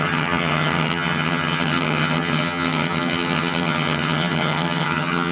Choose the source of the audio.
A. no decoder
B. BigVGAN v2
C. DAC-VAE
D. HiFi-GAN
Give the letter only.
D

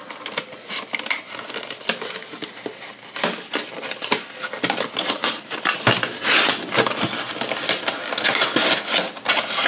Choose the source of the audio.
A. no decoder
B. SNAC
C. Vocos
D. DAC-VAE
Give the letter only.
A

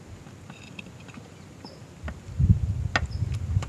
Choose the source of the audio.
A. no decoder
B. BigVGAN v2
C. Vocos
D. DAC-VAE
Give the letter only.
A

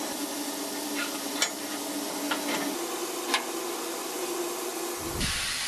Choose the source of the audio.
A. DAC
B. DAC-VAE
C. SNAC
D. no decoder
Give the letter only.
D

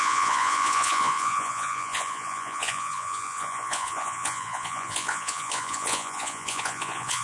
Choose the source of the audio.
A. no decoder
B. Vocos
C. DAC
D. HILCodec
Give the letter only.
B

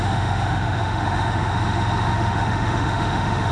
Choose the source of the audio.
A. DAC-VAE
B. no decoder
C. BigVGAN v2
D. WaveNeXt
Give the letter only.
A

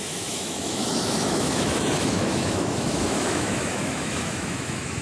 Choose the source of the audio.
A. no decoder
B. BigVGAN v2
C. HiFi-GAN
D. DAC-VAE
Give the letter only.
D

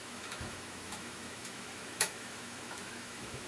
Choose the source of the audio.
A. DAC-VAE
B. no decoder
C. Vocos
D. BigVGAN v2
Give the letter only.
A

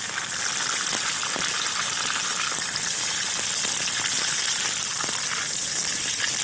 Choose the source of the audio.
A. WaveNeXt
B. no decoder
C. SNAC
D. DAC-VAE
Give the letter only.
B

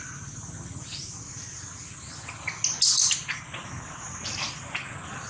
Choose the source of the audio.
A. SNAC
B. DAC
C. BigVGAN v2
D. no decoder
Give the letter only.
D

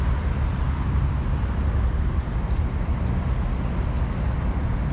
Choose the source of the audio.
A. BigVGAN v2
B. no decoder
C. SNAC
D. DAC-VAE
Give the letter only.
B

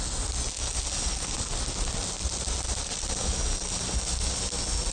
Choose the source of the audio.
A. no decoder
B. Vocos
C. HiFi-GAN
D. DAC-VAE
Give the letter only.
A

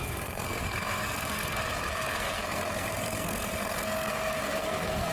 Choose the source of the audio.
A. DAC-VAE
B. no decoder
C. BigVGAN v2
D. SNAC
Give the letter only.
D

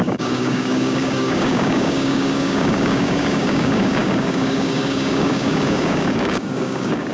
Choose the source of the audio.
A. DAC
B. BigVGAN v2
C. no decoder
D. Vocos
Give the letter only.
A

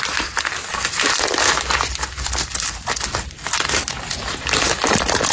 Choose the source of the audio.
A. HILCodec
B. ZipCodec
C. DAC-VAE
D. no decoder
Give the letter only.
D